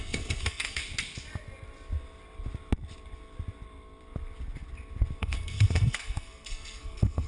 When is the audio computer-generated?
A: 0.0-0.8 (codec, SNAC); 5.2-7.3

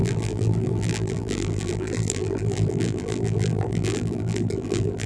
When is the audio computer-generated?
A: 0.0-5.1 (vocoder, BigVGAN v2)

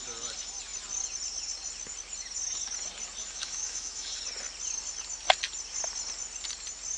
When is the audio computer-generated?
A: 3.2-4.2 (autoencoder, DAC-VAE)

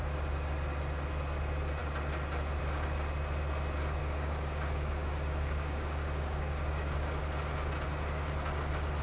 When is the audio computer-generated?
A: 4.0-7.2 (codec, DAC)

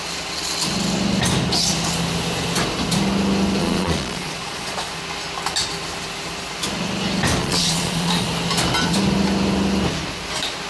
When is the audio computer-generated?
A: 3.6-5.0 (vocoder, Vocos); 7.4-8.3